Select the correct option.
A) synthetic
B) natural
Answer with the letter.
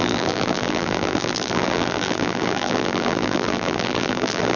A